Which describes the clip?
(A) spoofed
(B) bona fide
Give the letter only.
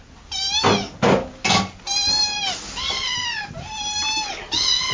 B